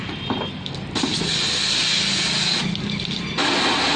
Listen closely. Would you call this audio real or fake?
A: real